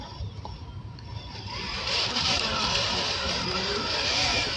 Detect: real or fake fake